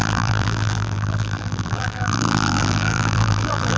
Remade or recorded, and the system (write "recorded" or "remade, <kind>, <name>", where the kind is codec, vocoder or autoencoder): remade, vocoder, BigVGAN v2